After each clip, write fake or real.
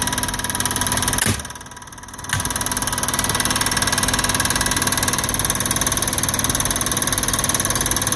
real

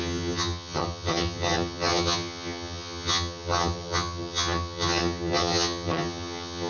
fake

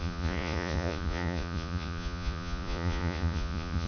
fake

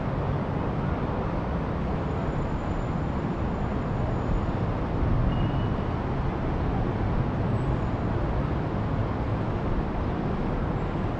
real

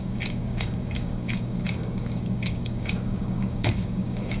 fake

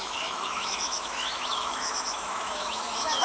fake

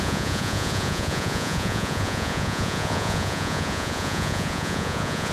fake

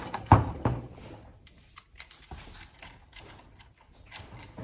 real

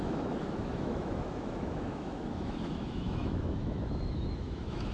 fake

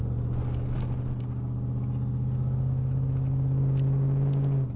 real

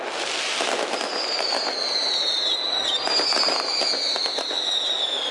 real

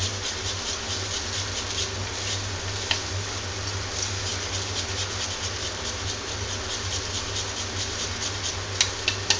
real